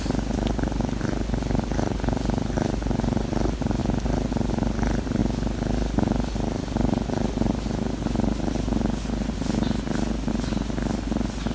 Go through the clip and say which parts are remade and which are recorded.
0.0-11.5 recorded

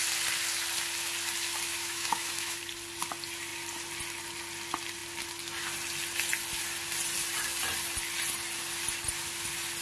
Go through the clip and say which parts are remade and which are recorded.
0.0-1.7 recorded; 1.7-2.6 remade; 2.6-9.8 recorded

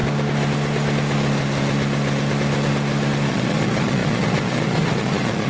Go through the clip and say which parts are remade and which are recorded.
0.0-3.3 recorded; 3.3-5.5 remade

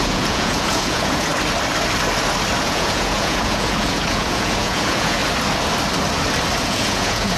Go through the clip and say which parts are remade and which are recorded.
0.0-1.3 remade; 1.3-2.6 recorded; 2.6-5.2 remade; 5.2-6.6 recorded; 6.6-7.4 remade

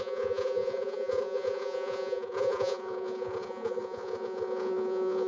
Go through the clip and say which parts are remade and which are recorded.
0.0-5.3 remade

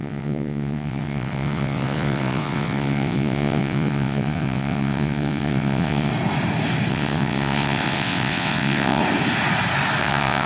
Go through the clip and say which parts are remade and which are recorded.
0.0-6.1 remade; 6.1-6.9 recorded; 6.9-9.0 remade; 9.0-10.0 recorded; 10.0-10.5 remade

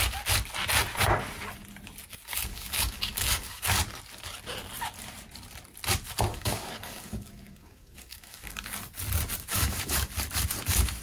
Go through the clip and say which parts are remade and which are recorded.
0.0-2.5 recorded; 2.5-3.8 remade; 3.8-6.3 recorded; 6.3-8.8 remade; 8.8-9.5 recorded; 9.5-10.1 remade; 10.1-11.0 recorded

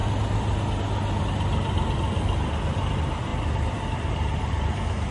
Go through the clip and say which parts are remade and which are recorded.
0.0-5.1 recorded